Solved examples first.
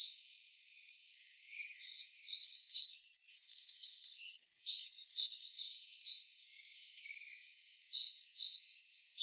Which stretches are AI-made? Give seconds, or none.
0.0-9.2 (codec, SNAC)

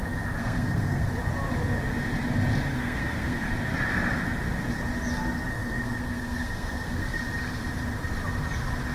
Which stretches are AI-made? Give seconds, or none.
0.4-1.1 (codec, SNAC); 2.7-3.5; 5.5-7.2